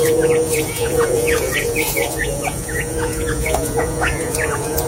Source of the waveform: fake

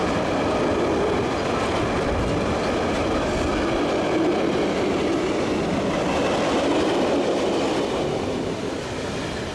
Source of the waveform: real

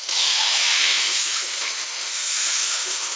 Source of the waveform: fake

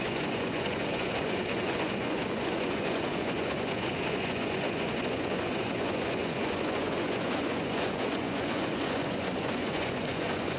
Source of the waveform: fake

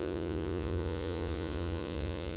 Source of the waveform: fake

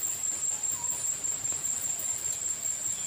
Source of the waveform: real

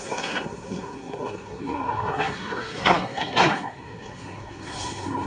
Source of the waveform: fake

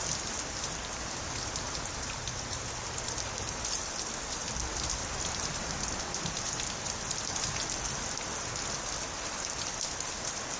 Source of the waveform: real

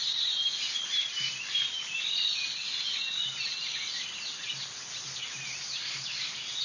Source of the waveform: real